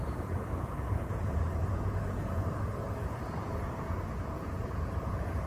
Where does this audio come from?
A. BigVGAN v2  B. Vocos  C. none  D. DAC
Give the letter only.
B